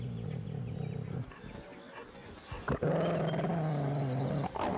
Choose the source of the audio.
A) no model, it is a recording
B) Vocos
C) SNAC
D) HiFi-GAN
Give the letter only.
A